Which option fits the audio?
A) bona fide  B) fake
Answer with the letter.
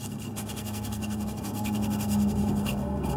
B